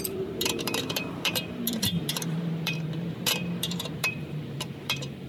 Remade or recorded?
remade